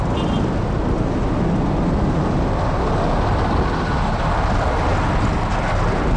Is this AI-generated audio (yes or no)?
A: no